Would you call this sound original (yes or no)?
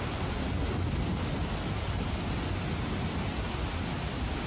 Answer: yes